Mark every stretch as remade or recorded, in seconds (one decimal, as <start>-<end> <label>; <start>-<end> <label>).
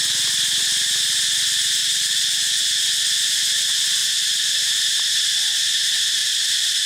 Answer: 0.0-1.8 recorded; 1.8-2.6 remade; 2.6-4.0 recorded; 4.0-4.5 remade; 4.5-6.2 recorded; 6.2-6.9 remade